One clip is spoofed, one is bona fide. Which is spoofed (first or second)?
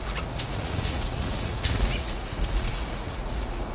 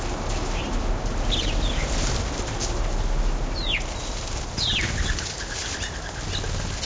first